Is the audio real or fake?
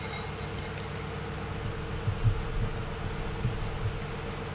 real